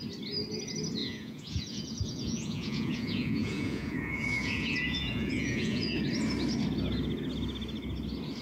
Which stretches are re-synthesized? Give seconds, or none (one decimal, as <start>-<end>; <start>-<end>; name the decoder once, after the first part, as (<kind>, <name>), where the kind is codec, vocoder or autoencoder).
1.0-6.0 (vocoder, Vocos)

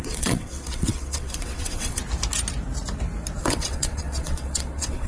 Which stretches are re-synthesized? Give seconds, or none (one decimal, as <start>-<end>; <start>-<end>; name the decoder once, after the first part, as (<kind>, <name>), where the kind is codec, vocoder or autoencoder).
0.0-2.0 (vocoder, WaveNeXt); 3.4-5.1

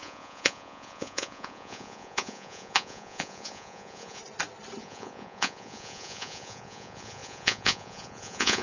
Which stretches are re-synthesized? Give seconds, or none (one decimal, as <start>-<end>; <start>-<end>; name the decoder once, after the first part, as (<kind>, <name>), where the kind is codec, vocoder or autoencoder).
0.0-4.2 (vocoder, Vocos); 4.8-8.6

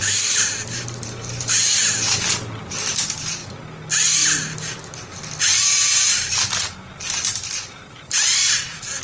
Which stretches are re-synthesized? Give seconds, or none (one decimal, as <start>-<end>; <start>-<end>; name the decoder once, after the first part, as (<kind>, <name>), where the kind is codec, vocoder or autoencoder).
0.0-3.4 (vocoder, BigVGAN v2); 7.3-9.0

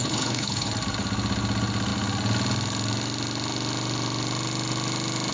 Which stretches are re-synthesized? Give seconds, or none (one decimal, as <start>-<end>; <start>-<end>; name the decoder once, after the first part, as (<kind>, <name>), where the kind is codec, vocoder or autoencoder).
0.0-0.7 (codec, HILCodec)